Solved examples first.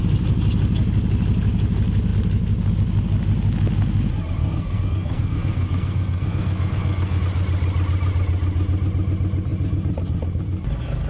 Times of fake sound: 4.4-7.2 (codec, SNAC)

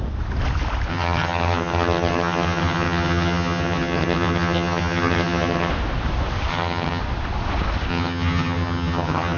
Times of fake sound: 0.9-5.7 (vocoder, HiFi-GAN); 6.5-7.0; 7.9-9.4

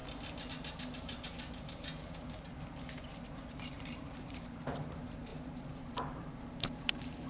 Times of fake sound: 0.5-2.5 (vocoder, BigVGAN v2); 3.3-7.3

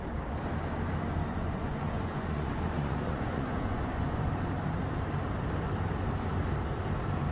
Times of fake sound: 1.3-4.3 (vocoder, Vocos)